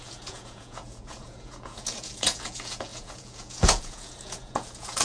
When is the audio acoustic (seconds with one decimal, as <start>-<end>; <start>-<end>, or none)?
none

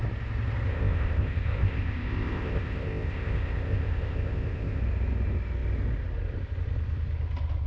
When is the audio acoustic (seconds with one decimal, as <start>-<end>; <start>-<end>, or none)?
0.0-0.7; 4.8-7.7